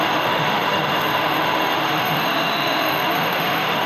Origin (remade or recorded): remade